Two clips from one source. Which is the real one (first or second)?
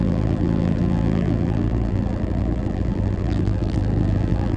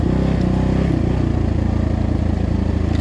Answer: second